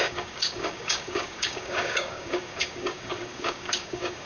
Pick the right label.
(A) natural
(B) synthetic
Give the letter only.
B